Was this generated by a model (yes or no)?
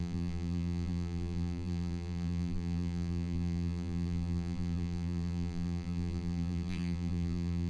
yes